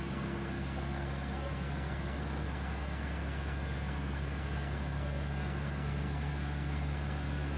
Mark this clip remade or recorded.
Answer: remade